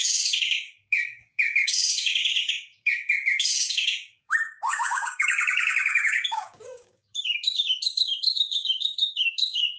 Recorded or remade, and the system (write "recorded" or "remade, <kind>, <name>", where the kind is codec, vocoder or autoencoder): remade, codec, DAC